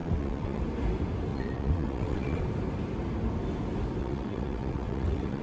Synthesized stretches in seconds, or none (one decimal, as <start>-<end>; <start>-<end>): 0.0-0.6; 1.3-2.4; 4.0-5.4